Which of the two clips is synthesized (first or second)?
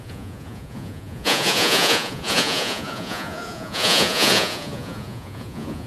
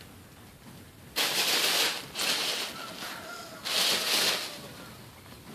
first